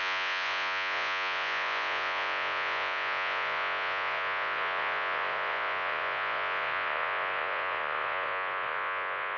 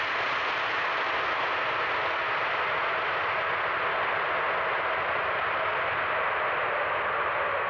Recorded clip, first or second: second